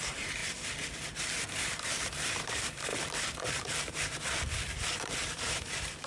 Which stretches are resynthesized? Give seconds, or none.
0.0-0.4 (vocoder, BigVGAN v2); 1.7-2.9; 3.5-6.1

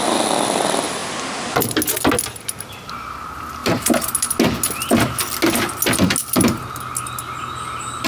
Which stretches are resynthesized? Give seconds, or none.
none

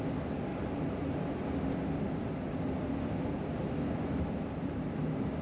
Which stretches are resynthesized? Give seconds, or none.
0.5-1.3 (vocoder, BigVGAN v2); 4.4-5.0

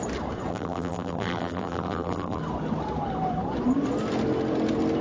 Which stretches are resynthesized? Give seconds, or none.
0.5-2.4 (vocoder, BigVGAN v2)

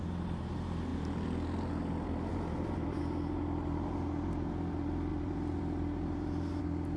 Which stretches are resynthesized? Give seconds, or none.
2.3-3.0 (vocoder, BigVGAN v2); 5.1-6.6